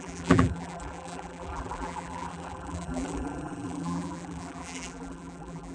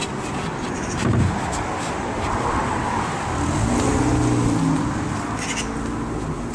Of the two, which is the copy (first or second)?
first